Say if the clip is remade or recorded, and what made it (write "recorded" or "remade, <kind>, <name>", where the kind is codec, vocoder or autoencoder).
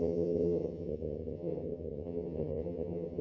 remade, vocoder, HiFi-GAN